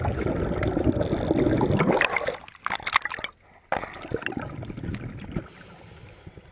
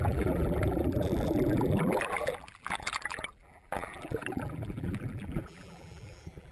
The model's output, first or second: second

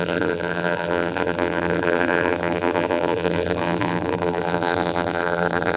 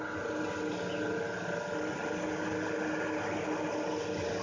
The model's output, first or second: first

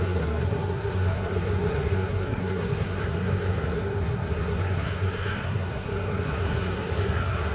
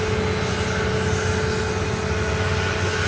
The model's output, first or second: first